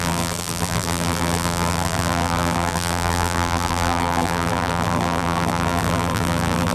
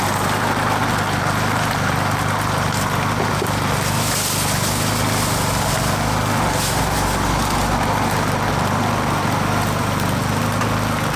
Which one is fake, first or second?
first